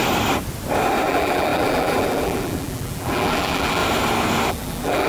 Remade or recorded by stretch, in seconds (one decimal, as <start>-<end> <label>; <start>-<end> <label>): 0.0-1.1 recorded; 1.1-3.8 remade; 3.8-4.5 recorded; 4.5-5.1 remade